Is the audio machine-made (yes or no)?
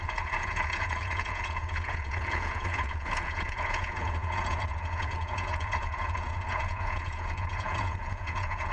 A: yes